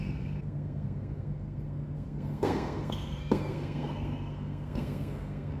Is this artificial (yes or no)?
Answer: yes